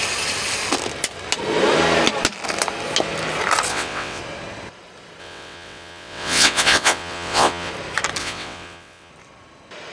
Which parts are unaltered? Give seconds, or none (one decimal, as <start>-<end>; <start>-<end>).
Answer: 0.0-3.7; 4.2-5.2; 7.7-8.2; 9.1-9.9